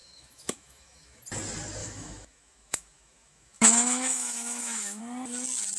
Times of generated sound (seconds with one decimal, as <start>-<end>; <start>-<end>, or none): 0.0-1.2; 1.8-5.0